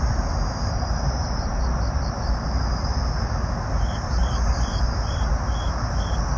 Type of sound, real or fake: fake